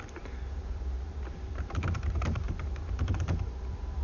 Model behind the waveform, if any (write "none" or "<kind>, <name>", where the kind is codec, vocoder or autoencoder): vocoder, BigVGAN v2